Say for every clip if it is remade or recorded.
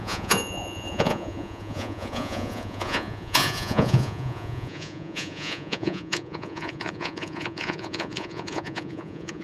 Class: remade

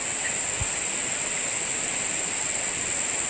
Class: recorded